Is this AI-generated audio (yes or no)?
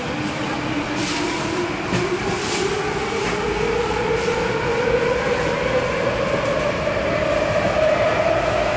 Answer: no